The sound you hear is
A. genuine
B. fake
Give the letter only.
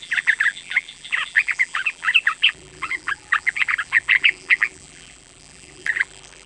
B